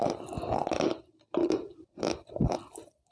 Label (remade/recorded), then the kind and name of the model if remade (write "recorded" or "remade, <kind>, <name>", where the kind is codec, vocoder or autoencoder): recorded